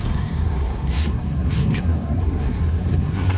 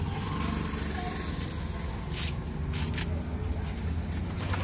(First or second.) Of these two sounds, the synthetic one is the first